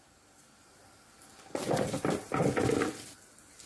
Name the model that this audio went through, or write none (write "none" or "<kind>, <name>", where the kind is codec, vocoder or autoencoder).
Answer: none